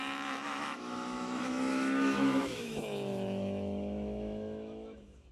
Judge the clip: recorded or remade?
remade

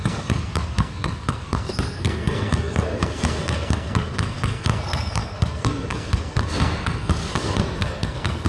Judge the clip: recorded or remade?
remade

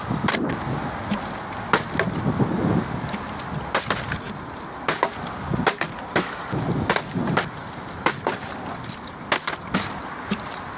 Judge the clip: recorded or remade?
recorded